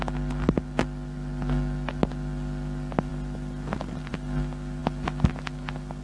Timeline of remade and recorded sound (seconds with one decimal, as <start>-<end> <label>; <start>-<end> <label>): 0.0-6.0 recorded